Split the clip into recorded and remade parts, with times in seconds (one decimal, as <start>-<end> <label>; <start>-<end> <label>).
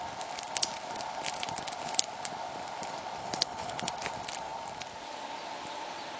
0.0-3.2 recorded; 3.2-3.9 remade; 3.9-6.2 recorded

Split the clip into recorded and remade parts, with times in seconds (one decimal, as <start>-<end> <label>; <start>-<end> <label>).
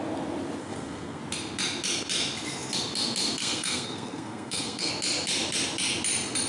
0.0-0.6 recorded; 0.6-1.2 remade; 1.2-3.4 recorded; 3.4-4.9 remade; 4.9-6.5 recorded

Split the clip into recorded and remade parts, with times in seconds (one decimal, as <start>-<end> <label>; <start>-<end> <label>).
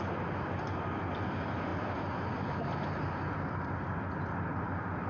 0.0-5.1 recorded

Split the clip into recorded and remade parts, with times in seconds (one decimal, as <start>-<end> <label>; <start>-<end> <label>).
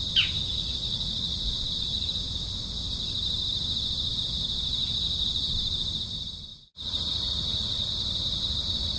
0.0-0.5 recorded; 0.5-1.6 remade; 1.6-6.5 recorded; 6.5-7.9 remade; 7.9-9.0 recorded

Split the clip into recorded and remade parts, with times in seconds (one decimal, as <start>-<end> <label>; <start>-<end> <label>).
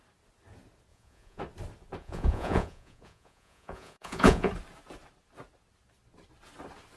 0.0-0.9 recorded; 0.9-1.4 remade; 1.4-2.0 recorded; 2.0-4.5 remade; 4.5-7.0 recorded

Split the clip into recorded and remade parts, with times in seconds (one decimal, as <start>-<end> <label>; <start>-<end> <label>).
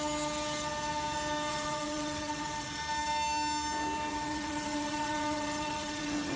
0.0-1.5 recorded; 1.5-2.8 remade; 2.8-4.1 recorded; 4.1-6.4 remade